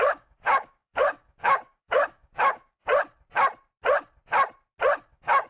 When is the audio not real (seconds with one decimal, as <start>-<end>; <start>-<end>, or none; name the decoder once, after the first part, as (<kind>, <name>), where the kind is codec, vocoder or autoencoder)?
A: 0.0-2.9 (codec, DAC); 5.1-5.5